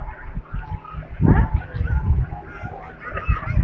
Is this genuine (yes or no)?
yes